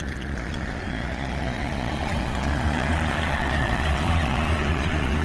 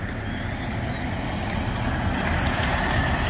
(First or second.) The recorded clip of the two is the second